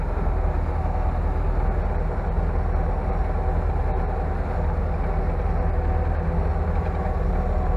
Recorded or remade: recorded